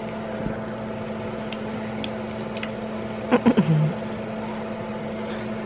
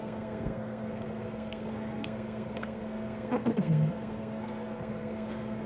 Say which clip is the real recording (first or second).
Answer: first